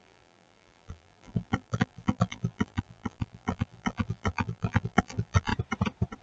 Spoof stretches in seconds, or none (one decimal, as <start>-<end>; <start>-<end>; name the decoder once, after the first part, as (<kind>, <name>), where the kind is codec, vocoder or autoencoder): 0.0-5.5 (vocoder, BigVGAN v2)